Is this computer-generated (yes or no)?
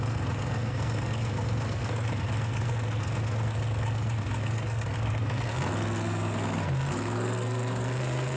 yes